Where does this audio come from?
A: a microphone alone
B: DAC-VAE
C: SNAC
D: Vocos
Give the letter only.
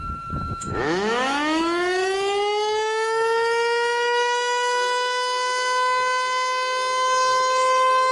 B